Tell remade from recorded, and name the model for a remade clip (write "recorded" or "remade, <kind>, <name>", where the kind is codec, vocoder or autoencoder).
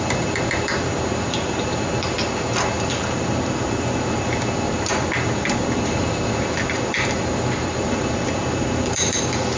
remade, vocoder, BigVGAN v2